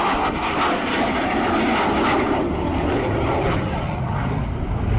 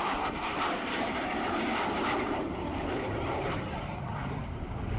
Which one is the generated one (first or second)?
second